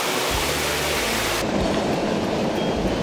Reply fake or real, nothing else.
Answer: real